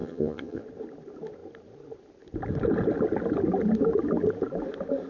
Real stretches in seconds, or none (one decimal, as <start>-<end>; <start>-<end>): 0.6-5.1